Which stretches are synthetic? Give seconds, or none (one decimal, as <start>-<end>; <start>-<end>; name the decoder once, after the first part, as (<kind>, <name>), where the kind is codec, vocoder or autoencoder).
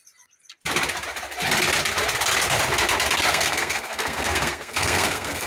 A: 3.3-5.5 (codec, SNAC)